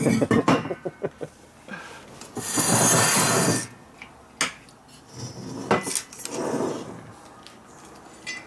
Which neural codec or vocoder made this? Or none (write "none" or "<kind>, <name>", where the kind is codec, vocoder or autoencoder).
none